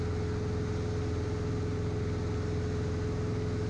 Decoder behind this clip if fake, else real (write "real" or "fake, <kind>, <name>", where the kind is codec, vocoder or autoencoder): real